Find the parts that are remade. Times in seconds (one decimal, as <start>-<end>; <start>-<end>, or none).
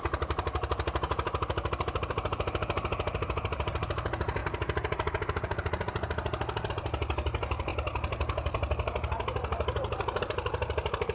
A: 0.0-4.4; 6.7-7.7; 10.2-11.1